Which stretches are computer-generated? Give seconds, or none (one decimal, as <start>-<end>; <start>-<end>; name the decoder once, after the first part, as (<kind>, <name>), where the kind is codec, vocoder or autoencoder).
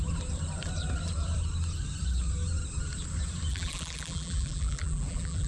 3.5-5.5 (vocoder, BigVGAN v2)